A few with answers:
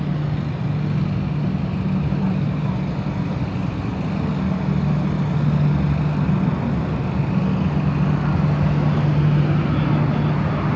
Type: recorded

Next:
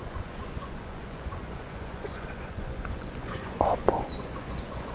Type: remade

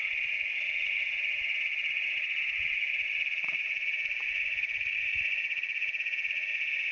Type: remade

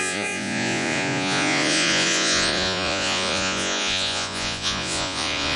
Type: remade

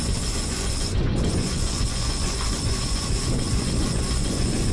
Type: remade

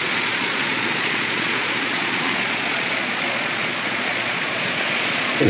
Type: remade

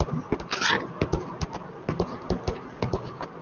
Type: recorded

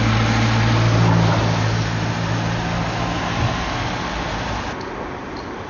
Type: recorded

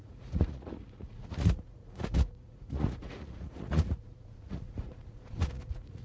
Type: remade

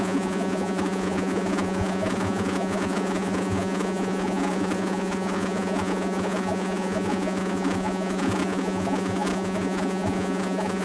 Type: remade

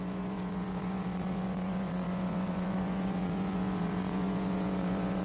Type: remade